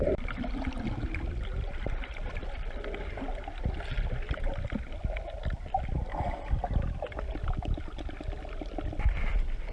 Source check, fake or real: real